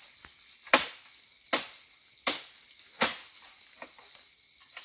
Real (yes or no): yes